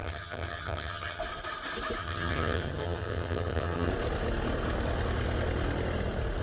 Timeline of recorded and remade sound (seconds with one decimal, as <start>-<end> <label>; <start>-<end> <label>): 0.0-1.2 remade; 1.2-2.0 recorded; 2.0-3.9 remade; 3.9-6.4 recorded